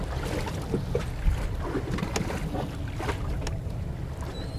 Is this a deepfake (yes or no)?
no